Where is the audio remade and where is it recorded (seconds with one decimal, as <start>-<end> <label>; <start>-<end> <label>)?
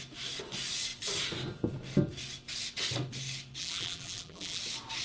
0.0-3.6 recorded; 3.6-4.6 remade; 4.6-5.0 recorded